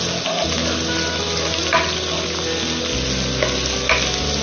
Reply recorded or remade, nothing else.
recorded